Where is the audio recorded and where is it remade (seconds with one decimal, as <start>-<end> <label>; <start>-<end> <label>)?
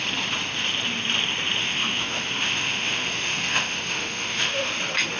0.0-1.6 recorded; 1.6-4.7 remade; 4.7-5.2 recorded